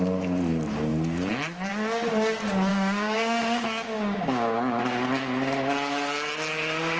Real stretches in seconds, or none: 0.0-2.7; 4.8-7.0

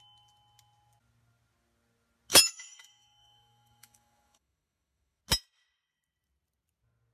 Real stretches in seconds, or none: 0.0-2.3; 5.2-7.1

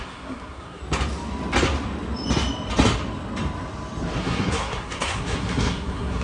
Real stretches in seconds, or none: 0.8-4.2

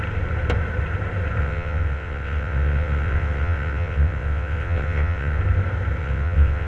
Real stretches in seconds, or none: 0.0-1.4; 5.4-6.0

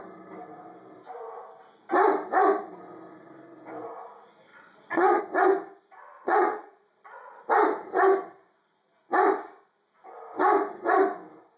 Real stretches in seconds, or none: 0.0-4.5; 5.2-6.2; 7.4-11.6

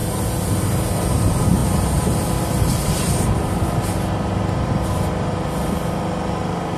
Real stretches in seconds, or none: 0.0-6.8

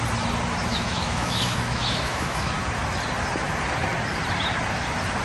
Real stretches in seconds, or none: 0.0-0.7; 2.5-5.2